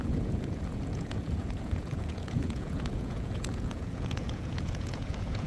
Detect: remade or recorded remade